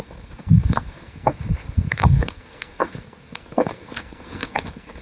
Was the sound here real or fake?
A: fake